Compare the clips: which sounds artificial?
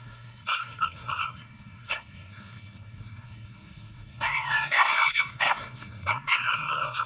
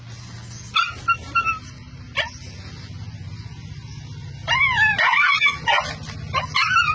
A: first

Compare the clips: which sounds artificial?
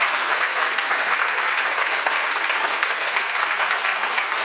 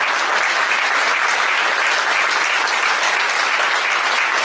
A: first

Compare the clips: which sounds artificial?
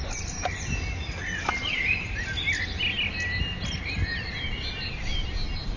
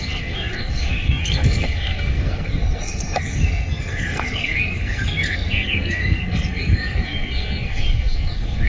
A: second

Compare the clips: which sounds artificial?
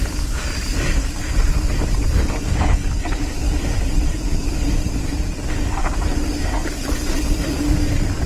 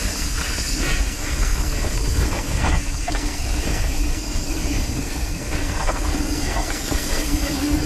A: second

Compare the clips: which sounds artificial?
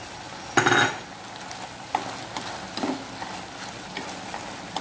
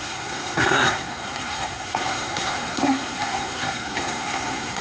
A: second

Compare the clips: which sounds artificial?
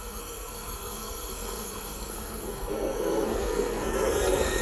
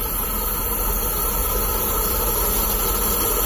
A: first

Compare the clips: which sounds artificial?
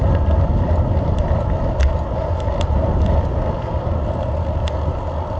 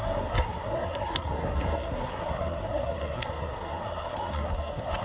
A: second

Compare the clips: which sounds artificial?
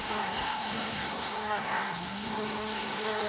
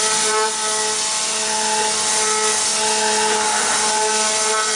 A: first